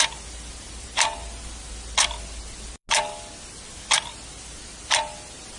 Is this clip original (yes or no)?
yes